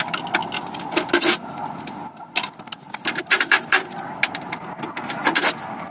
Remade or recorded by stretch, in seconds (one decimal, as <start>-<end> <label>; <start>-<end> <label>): 0.0-5.9 recorded